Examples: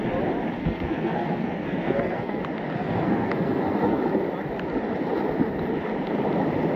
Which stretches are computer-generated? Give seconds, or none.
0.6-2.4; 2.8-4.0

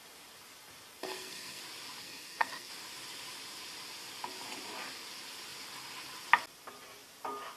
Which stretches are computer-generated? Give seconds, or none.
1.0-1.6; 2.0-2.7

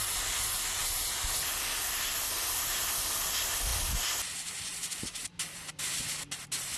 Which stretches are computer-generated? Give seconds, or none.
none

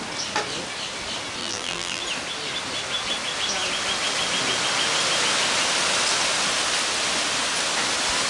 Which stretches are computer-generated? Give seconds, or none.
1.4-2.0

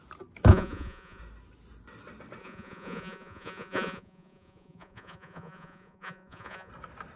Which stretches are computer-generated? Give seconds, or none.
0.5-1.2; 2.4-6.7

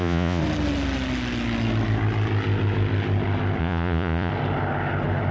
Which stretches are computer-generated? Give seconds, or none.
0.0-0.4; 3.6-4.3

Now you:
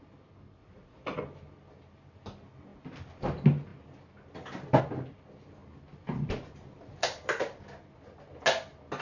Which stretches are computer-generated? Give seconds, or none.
0.6-1.2